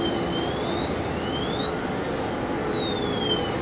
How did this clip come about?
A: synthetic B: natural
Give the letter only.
B